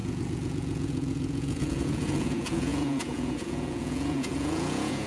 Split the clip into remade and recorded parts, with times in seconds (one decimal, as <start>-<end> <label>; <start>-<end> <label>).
0.0-5.1 remade